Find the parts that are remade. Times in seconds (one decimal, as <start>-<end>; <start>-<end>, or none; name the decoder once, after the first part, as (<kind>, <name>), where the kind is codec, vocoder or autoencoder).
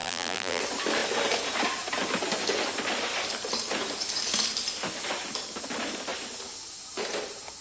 0.0-0.6 (vocoder, BigVGAN v2)